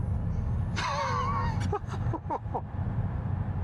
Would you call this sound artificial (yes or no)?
no